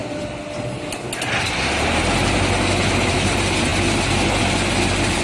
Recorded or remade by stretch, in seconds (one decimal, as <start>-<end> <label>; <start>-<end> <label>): 0.0-5.2 recorded